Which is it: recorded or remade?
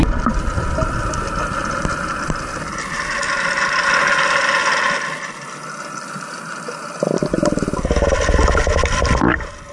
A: recorded